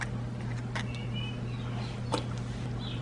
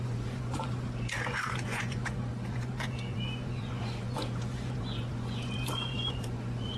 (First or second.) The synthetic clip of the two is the second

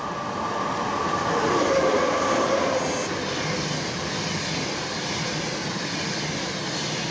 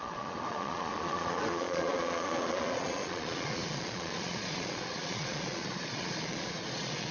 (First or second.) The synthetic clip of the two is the second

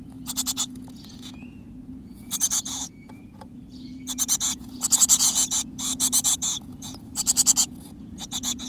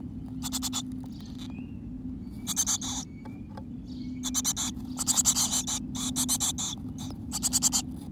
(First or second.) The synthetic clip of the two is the first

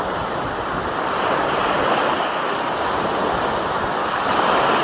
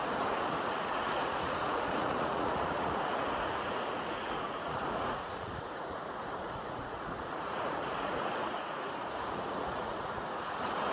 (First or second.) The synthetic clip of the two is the second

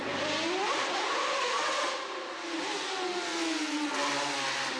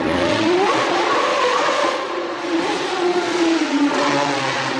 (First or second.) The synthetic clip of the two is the second